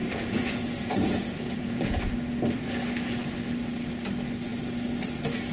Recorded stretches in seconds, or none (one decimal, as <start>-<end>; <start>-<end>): 2.1-5.5